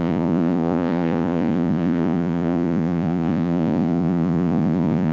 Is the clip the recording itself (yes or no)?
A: no